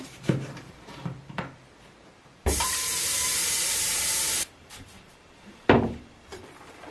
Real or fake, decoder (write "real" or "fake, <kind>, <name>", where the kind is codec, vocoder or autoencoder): fake, vocoder, BigVGAN v2